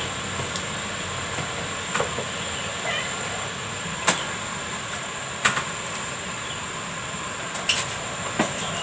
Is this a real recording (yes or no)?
yes